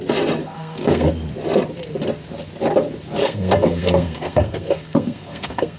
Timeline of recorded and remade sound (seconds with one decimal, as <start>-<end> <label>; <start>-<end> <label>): 0.0-0.4 recorded; 0.4-1.1 remade; 1.1-3.2 recorded; 3.2-5.8 remade